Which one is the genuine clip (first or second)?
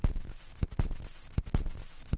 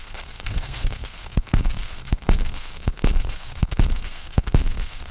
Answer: first